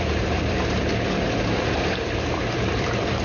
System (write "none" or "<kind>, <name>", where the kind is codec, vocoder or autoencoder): vocoder, BigVGAN v2